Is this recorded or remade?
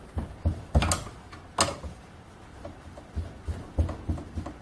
recorded